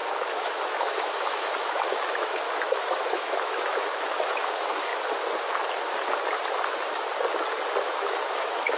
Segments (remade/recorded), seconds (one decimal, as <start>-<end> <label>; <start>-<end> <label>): 0.0-4.9 remade; 4.9-7.8 recorded; 7.8-8.8 remade